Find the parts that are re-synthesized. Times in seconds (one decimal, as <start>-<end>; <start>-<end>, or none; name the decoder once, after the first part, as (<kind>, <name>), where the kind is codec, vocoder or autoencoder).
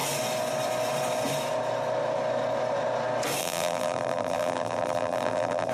3.4-5.7 (vocoder, BigVGAN v2)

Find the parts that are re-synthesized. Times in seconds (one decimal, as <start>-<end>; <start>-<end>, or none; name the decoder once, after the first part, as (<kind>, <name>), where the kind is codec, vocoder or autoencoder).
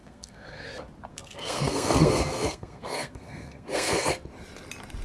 0.0-0.7 (codec, SNAC); 1.1-4.1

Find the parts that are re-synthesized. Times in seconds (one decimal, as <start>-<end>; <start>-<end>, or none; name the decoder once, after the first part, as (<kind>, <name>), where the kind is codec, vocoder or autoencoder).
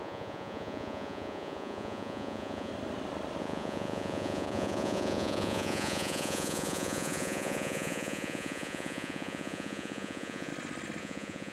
0.0-2.7 (vocoder, Vocos); 3.4-10.5; 11.0-11.5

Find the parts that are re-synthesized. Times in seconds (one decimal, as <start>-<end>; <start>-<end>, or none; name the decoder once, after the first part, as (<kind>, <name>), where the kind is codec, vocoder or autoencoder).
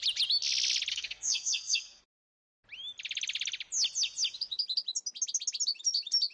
0.9-2.0 (codec, SNAC)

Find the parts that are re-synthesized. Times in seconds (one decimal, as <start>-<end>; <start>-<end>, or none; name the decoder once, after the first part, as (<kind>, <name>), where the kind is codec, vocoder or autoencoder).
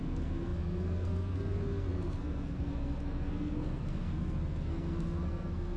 0.0-5.8 (codec, SNAC)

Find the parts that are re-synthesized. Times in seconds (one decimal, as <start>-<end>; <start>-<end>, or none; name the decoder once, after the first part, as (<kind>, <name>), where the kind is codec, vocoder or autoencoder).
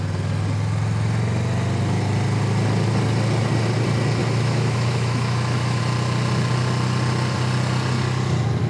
4.2-5.8 (autoencoder, DAC-VAE)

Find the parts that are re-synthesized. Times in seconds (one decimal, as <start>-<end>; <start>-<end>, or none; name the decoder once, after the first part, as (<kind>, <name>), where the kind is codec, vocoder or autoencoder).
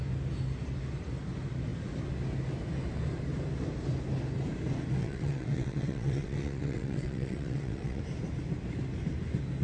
5.0-8.0 (vocoder, WaveNeXt)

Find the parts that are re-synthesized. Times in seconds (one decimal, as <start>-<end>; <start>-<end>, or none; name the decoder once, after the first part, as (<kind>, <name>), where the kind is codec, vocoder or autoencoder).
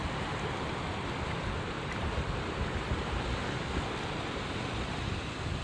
none